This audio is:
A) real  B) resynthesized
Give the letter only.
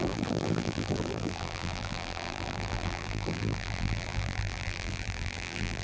B